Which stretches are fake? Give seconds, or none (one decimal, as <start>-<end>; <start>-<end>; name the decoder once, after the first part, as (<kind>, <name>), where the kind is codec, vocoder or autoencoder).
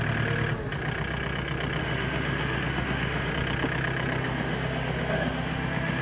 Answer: 1.8-3.3 (autoencoder, DAC-VAE); 4.2-6.0